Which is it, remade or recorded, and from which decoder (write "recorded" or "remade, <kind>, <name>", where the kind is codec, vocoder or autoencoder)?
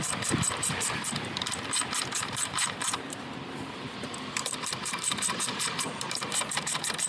remade, vocoder, BigVGAN v2